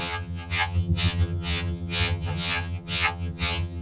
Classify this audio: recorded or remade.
remade